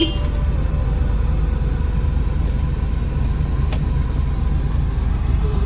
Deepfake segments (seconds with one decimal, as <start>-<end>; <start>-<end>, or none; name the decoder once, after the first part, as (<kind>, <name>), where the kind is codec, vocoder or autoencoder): none